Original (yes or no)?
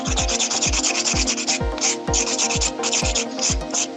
yes